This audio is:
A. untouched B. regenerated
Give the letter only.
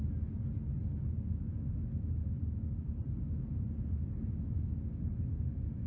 A